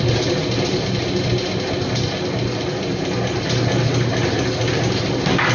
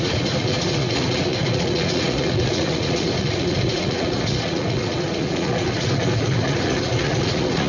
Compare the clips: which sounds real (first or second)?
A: first